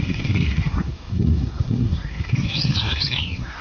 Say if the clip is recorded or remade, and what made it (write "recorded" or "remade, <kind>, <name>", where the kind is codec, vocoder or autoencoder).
remade, codec, SNAC